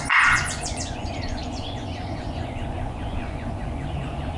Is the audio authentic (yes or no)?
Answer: no